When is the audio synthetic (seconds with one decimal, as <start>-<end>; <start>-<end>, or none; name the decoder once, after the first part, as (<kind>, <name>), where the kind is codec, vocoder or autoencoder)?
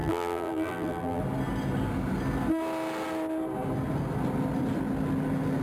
0.0-1.2 (vocoder, BigVGAN v2)